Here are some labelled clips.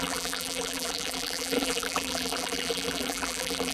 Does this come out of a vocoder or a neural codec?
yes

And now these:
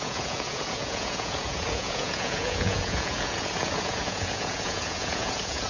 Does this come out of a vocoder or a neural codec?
yes